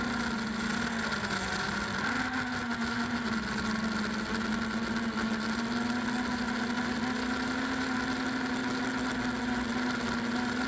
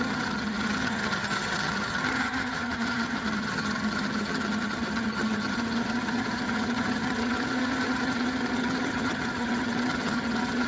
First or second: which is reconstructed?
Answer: second